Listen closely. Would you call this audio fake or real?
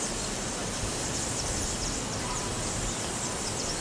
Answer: fake